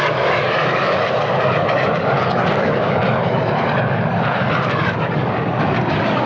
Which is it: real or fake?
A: fake